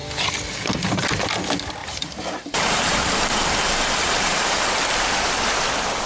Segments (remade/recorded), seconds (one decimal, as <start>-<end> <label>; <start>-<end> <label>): 0.0-1.8 recorded; 1.8-4.7 remade; 4.7-6.1 recorded